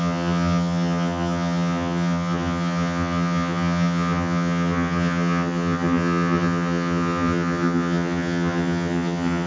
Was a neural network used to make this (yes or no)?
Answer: yes